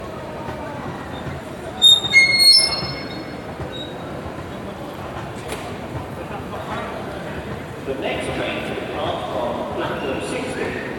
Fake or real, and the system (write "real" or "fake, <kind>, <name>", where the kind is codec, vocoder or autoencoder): fake, vocoder, BigVGAN v2